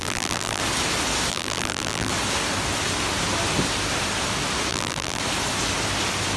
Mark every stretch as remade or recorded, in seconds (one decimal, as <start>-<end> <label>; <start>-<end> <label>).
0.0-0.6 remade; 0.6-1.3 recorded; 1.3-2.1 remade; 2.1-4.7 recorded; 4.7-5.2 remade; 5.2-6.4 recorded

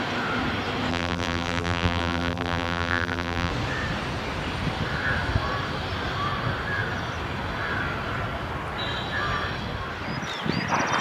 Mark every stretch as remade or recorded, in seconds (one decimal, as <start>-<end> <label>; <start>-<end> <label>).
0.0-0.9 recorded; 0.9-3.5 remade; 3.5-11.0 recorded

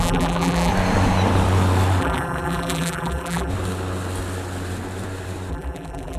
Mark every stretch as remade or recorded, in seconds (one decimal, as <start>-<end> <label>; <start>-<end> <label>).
0.0-0.7 remade; 0.7-2.0 recorded; 2.0-3.5 remade; 3.5-5.5 recorded; 5.5-6.2 remade

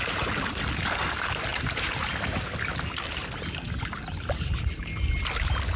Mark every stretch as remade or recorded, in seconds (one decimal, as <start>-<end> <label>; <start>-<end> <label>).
0.0-1.5 recorded; 1.5-2.1 remade; 2.1-3.2 recorded; 3.2-5.2 remade; 5.2-5.8 recorded

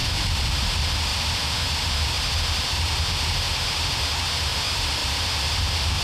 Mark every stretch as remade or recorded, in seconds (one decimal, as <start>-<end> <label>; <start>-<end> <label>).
0.0-0.5 remade; 0.5-1.1 recorded; 1.1-1.6 remade; 1.6-6.0 recorded

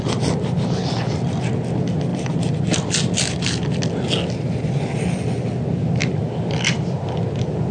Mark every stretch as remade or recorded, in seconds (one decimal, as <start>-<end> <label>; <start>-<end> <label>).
0.0-2.1 recorded; 2.1-2.9 remade; 2.9-6.0 recorded; 6.0-6.5 remade; 6.5-7.7 recorded

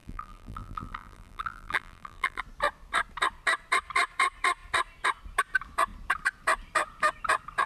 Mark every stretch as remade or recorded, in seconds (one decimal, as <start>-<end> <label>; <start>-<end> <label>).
0.0-2.4 remade; 2.4-7.7 recorded